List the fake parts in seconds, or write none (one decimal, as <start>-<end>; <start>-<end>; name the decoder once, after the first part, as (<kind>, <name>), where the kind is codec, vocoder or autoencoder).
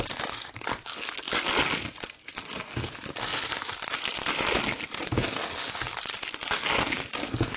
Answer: none